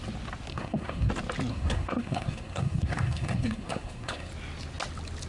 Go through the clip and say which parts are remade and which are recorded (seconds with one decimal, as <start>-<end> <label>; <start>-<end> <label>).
0.0-0.5 recorded; 0.5-1.1 remade; 1.1-1.5 recorded; 1.5-4.3 remade; 4.3-5.3 recorded

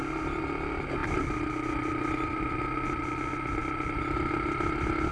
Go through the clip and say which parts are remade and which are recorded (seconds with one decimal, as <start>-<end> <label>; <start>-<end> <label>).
0.0-5.1 recorded